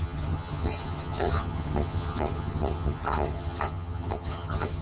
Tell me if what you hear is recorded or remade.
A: remade